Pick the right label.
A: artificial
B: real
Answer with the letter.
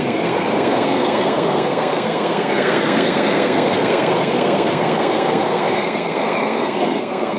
A